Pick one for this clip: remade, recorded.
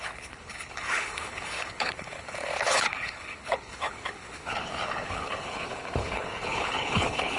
remade